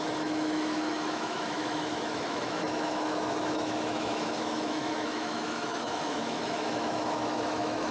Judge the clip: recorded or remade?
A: remade